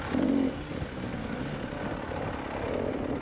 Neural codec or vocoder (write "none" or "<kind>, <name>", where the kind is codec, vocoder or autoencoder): none